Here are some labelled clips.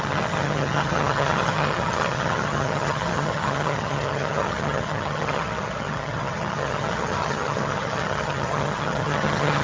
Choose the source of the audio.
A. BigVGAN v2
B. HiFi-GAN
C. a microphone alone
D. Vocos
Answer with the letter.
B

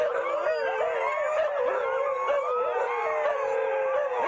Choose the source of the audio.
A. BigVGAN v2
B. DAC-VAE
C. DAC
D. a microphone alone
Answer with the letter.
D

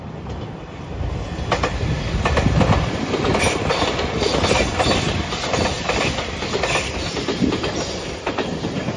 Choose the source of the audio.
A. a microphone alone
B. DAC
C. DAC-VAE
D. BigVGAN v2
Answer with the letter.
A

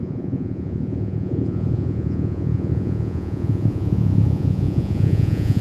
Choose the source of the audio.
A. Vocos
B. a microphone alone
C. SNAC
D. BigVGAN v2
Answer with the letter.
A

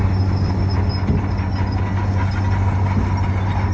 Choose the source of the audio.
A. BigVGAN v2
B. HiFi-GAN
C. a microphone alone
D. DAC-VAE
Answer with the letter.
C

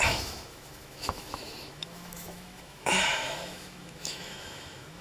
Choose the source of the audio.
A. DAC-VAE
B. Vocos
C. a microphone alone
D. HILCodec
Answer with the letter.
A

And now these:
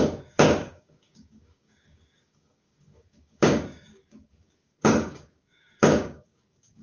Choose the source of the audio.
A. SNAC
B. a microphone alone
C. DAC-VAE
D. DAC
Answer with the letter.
D